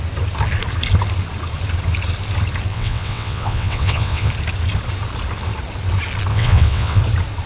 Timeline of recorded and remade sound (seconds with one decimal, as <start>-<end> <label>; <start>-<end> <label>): 0.0-2.7 recorded; 2.7-4.3 remade; 4.3-6.3 recorded; 6.3-7.0 remade; 7.0-7.5 recorded